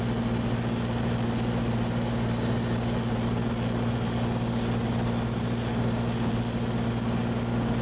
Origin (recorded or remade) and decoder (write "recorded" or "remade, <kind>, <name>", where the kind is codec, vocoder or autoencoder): recorded